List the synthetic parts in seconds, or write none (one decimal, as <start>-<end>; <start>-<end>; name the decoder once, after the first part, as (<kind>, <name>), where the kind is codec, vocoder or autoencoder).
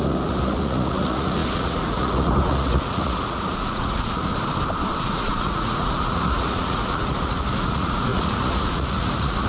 0.0-4.3 (vocoder, Vocos); 5.0-9.5